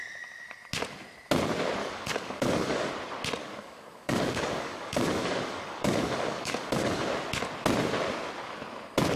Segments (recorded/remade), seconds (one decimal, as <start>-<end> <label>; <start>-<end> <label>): 0.0-1.8 recorded; 1.8-2.9 remade; 2.9-3.4 recorded; 3.4-7.1 remade; 7.1-9.2 recorded